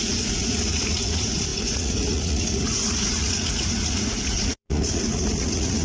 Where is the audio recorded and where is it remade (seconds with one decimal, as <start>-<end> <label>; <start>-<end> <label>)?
0.0-5.8 remade